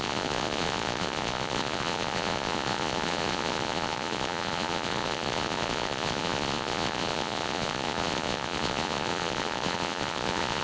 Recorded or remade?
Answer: remade